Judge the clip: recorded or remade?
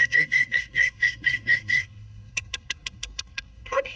remade